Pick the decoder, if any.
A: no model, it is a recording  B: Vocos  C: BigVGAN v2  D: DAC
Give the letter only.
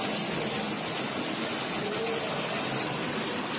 A